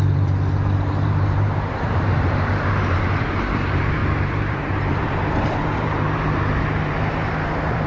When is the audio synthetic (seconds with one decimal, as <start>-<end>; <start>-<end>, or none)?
0.0-7.9